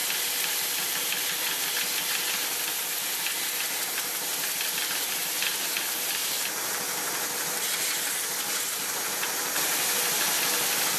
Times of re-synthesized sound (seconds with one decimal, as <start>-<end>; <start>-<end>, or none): none